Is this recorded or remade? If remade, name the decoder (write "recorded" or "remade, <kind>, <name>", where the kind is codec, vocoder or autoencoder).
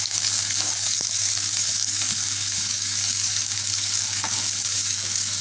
remade, codec, DAC